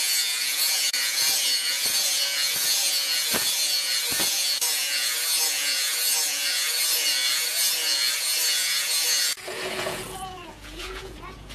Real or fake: fake